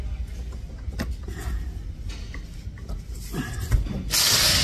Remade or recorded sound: recorded